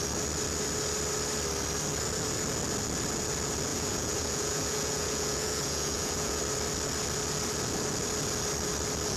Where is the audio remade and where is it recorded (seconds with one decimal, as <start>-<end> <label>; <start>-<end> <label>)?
0.0-3.7 recorded; 3.7-6.4 remade; 6.4-9.2 recorded